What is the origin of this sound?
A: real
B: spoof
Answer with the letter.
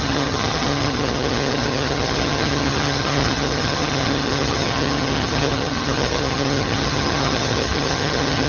B